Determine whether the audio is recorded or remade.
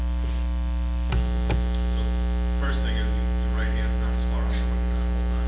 recorded